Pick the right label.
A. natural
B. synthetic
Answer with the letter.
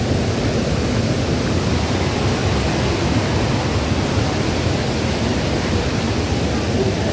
A